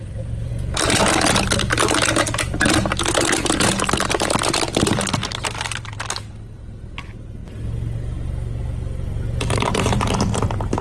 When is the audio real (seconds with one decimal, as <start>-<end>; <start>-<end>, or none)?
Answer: 0.5-4.9; 7.4-8.6